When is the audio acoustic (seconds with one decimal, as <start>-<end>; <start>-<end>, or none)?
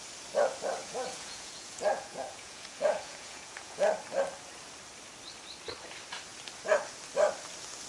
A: 0.0-0.8; 3.9-7.9